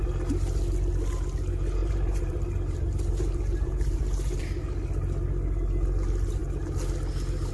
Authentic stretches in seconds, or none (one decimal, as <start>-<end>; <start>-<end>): 0.0-1.8; 4.4-7.5